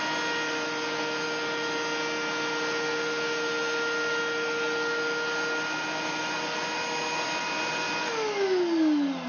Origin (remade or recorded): recorded